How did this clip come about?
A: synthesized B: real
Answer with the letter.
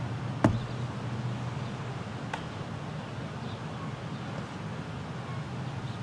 B